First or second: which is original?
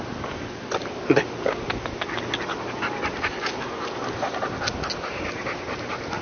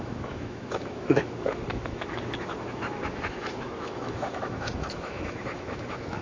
first